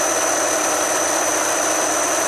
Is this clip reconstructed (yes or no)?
no